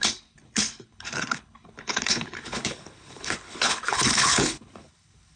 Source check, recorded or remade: remade